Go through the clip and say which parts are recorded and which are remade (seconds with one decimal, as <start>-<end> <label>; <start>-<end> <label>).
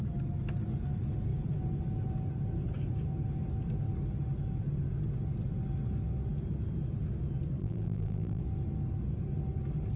0.0-7.6 recorded; 7.6-8.4 remade; 8.4-10.0 recorded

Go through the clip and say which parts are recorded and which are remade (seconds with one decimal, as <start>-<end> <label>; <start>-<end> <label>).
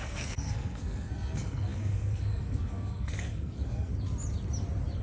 0.0-3.9 remade; 3.9-5.0 recorded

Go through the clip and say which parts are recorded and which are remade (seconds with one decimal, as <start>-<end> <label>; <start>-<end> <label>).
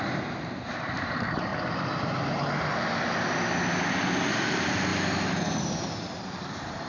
0.0-1.5 remade; 1.5-4.5 recorded; 4.5-4.9 remade; 4.9-6.4 recorded; 6.4-6.9 remade